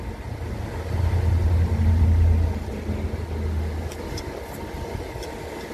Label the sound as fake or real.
real